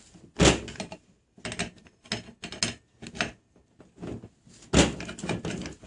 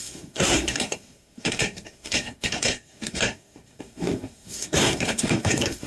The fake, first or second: second